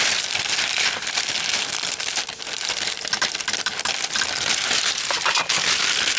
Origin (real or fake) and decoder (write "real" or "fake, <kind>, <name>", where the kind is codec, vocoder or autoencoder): fake, vocoder, BigVGAN v2